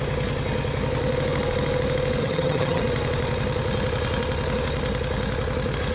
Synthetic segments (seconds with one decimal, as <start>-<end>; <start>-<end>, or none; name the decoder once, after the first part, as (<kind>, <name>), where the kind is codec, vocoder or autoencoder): 2.2-2.8 (vocoder, HiFi-GAN)